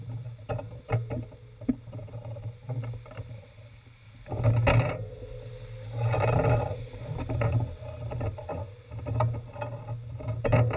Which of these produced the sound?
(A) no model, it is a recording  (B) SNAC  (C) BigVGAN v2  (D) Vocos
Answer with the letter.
A